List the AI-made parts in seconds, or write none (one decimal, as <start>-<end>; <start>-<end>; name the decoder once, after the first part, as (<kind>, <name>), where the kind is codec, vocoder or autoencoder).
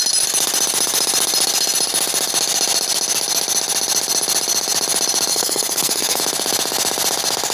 5.3-6.2 (codec, SNAC)